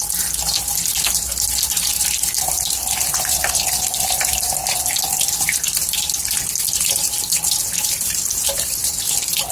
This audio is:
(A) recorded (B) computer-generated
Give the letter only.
A